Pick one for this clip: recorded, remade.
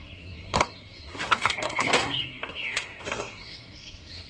remade